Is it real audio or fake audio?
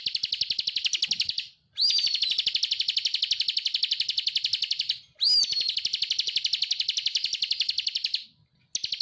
real